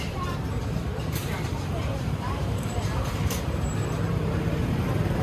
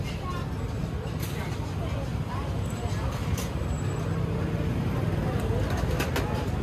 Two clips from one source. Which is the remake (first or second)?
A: first